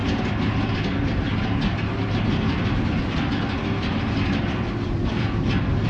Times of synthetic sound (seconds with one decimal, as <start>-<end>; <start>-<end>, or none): 0.7-1.3; 3.0-5.9